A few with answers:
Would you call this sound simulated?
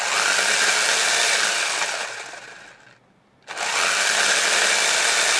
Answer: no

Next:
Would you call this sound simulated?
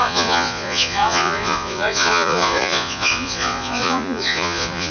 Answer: yes